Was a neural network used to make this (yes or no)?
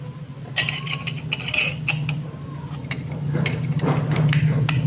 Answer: no